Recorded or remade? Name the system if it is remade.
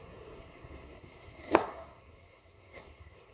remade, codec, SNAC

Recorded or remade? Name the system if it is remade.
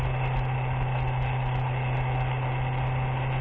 recorded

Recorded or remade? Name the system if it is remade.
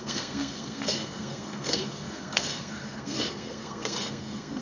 remade, codec, SNAC